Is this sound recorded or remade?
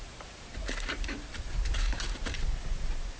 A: remade